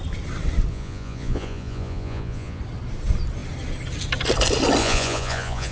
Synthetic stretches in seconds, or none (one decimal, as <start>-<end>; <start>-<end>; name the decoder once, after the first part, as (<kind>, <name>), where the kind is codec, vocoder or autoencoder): 0.7-2.6 (vocoder, Vocos); 4.8-5.7